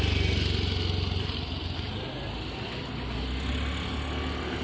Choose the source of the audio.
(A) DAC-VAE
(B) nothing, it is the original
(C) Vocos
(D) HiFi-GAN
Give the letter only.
B